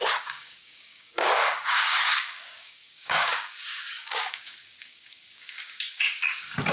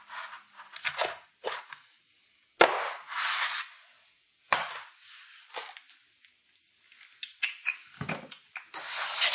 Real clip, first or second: second